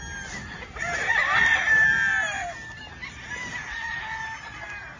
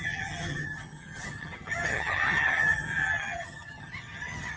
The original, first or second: first